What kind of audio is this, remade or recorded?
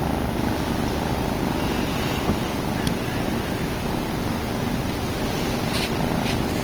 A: recorded